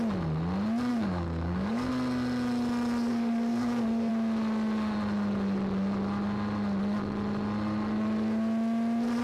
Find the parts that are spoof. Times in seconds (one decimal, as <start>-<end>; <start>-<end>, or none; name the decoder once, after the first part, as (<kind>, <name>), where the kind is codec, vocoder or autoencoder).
0.9-1.9 (codec, DAC); 3.1-4.1